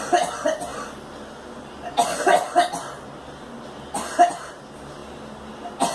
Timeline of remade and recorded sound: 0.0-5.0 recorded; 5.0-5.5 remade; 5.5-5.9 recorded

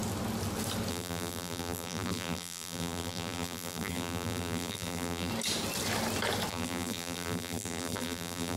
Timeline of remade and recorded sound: 0.0-0.9 recorded; 0.9-5.3 remade; 5.3-6.5 recorded; 6.5-8.6 remade

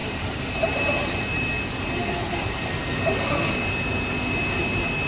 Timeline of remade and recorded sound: 0.0-1.2 remade; 1.2-5.1 recorded